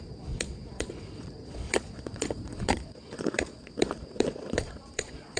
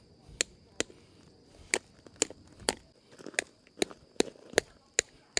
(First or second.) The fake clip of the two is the first